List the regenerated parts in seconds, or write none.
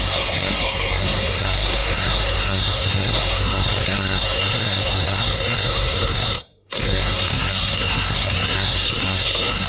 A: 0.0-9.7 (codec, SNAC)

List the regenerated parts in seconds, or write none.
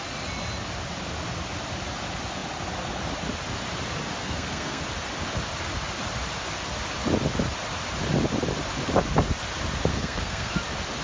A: 4.2-4.8 (codec, SNAC); 9.9-10.5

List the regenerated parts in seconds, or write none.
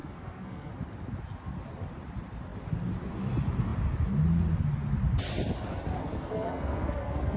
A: 0.0-0.7 (codec, SNAC); 6.0-7.4